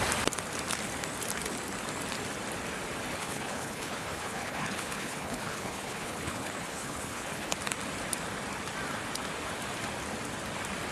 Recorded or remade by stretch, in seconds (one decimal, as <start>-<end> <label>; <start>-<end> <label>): 0.0-3.1 recorded; 3.1-7.5 remade; 7.5-10.9 recorded